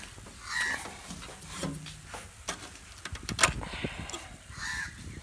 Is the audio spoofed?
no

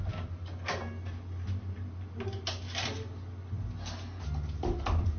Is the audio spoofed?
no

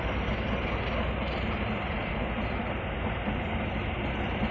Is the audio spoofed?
no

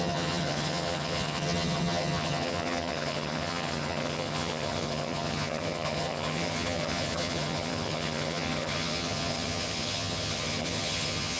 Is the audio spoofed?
yes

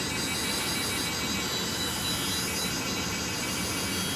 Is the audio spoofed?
no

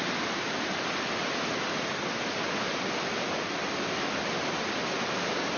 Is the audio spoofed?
no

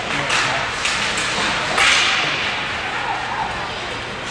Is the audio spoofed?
no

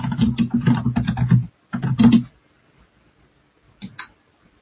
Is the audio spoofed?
no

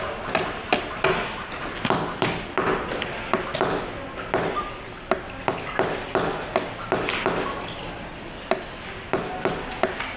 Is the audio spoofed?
no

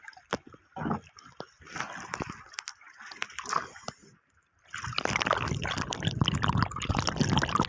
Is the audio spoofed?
no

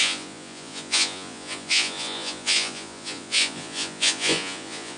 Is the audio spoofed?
yes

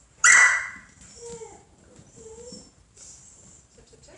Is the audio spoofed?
yes